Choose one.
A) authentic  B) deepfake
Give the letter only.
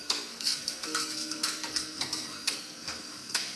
B